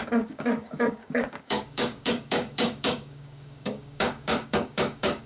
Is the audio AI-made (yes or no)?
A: yes